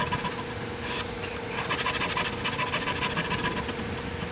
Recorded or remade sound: recorded